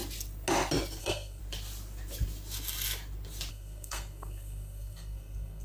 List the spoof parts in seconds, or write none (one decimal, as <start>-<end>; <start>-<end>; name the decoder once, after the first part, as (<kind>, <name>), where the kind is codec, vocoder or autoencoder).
1.0-1.4 (codec, SNAC); 3.5-5.6